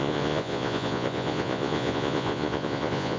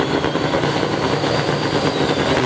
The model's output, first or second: first